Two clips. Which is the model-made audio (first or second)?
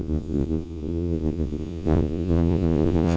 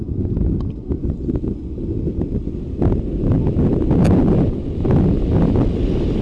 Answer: first